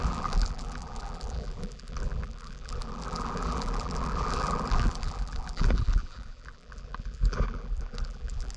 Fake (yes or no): yes